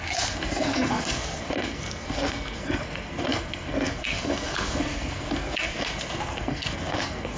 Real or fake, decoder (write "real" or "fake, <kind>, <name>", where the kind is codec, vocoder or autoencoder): fake, codec, SNAC